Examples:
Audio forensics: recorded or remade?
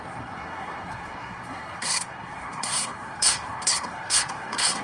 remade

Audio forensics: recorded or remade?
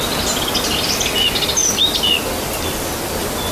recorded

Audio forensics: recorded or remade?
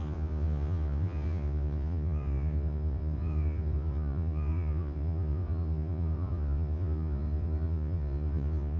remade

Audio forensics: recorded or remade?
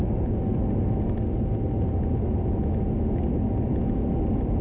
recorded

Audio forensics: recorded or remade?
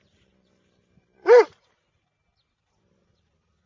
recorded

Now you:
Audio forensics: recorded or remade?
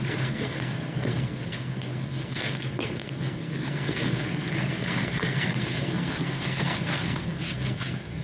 remade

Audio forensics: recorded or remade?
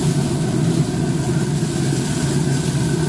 recorded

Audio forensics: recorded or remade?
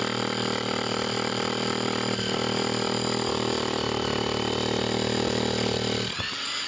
recorded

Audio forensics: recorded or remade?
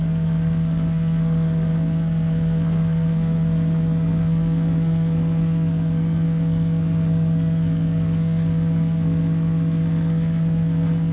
remade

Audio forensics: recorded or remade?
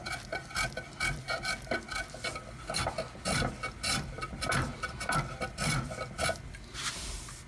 recorded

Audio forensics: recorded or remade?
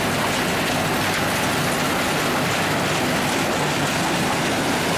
recorded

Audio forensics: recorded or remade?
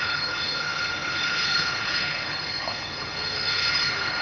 remade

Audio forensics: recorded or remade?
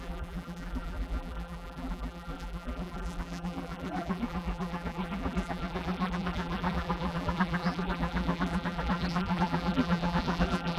remade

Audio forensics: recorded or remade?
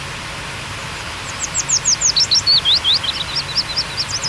recorded